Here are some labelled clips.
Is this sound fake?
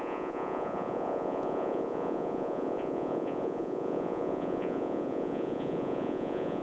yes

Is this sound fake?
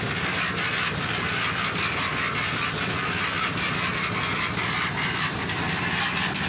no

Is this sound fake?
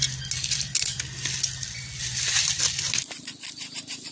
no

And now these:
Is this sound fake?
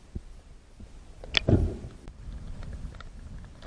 no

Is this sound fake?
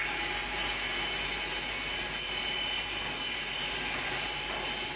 no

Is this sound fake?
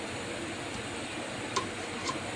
no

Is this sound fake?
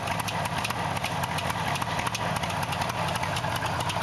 no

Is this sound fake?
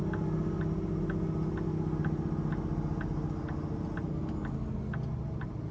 no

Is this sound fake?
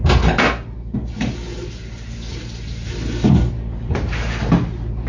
no